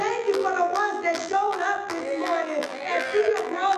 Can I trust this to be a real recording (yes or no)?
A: no